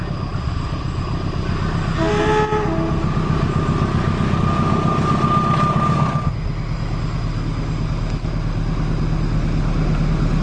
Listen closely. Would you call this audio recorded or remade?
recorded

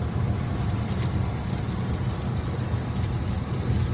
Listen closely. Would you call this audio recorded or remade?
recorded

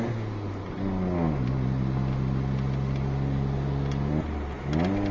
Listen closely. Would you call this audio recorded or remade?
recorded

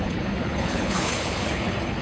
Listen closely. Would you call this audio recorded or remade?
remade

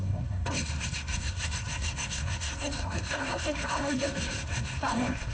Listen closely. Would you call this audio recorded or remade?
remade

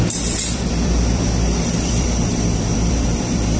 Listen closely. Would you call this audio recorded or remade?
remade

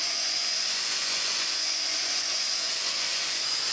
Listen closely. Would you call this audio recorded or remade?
remade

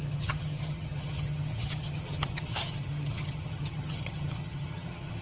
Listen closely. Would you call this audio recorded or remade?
remade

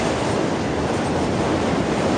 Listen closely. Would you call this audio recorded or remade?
recorded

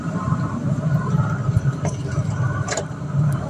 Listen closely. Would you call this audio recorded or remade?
remade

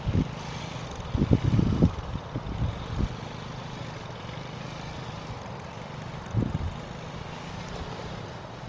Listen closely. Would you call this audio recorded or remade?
recorded